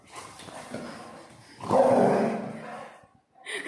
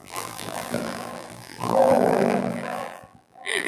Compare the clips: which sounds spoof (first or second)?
second